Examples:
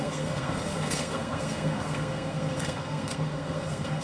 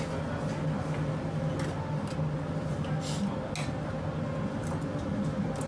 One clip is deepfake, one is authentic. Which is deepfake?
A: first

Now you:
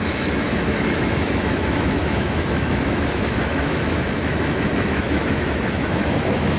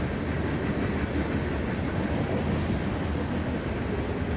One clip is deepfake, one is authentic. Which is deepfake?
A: first